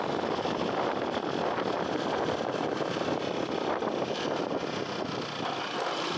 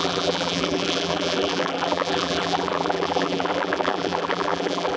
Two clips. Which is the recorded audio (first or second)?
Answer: first